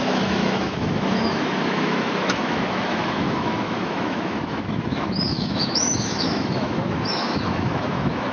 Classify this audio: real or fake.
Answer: fake